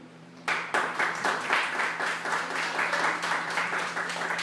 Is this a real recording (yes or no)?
no